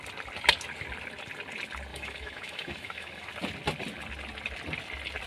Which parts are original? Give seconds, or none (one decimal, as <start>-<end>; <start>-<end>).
0.0-1.9; 3.3-5.3